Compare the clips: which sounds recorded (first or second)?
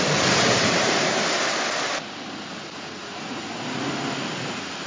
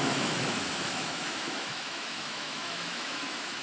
first